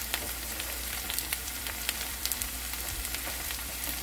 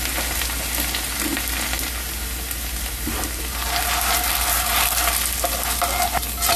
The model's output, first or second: first